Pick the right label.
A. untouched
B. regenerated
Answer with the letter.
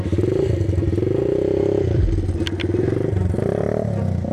A